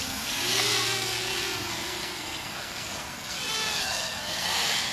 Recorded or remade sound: remade